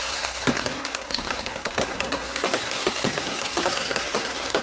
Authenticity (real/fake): fake